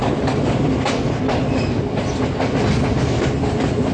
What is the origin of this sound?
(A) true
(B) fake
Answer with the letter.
A